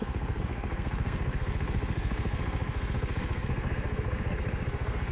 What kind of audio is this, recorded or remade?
remade